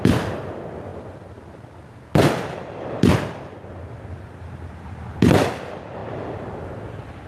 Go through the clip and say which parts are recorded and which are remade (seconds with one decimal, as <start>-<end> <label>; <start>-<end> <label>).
0.0-7.3 recorded